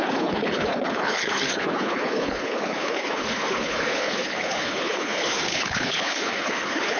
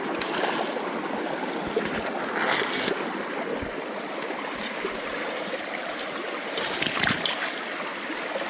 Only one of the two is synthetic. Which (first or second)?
first